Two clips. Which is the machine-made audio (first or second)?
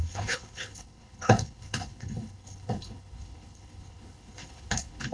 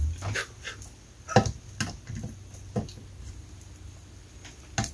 first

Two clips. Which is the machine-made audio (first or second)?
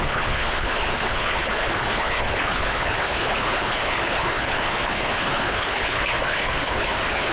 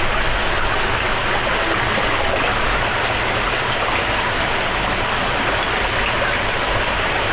first